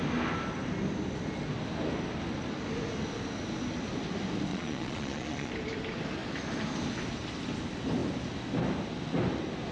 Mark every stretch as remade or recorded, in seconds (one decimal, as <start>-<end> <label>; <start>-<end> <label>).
0.0-4.5 recorded; 4.5-5.5 remade; 5.5-9.7 recorded